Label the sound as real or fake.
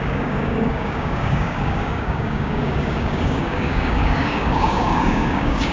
fake